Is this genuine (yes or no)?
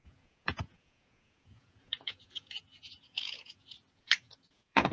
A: no